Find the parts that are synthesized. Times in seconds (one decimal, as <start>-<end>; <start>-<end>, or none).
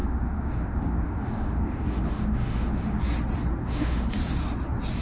0.0-3.0; 3.6-4.1